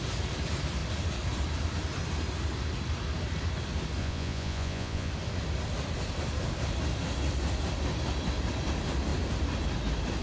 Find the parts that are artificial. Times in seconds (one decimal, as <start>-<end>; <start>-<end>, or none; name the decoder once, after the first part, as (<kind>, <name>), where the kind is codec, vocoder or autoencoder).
4.0-5.1 (vocoder, Vocos)